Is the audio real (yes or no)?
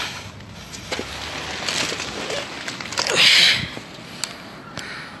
yes